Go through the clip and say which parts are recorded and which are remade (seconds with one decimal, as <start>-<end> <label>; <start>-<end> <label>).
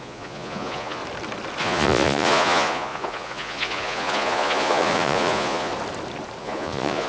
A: 0.0-1.0 remade; 1.0-1.6 recorded; 1.6-5.7 remade; 5.7-6.4 recorded; 6.4-7.1 remade